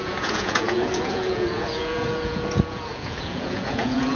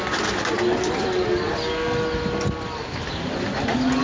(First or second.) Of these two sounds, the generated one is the first